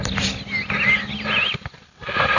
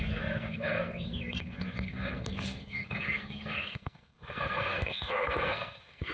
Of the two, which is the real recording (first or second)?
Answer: first